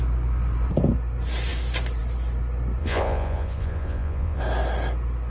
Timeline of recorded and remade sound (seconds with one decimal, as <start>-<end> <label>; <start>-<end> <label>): 0.0-2.8 recorded; 2.8-4.4 remade; 4.4-5.3 recorded